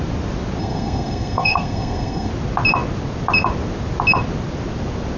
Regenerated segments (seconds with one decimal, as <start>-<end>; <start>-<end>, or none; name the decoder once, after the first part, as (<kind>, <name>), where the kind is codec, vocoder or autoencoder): 0.6-2.3 (codec, SNAC)